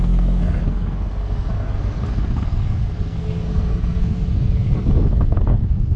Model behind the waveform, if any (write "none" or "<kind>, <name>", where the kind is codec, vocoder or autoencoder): codec, SNAC